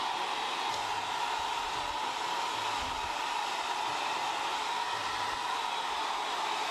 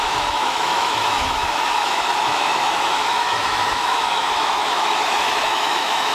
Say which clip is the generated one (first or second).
second